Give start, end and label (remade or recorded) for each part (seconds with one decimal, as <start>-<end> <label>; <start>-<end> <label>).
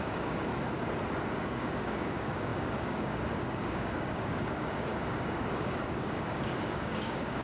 0.0-0.5 remade; 0.5-1.3 recorded; 1.3-7.4 remade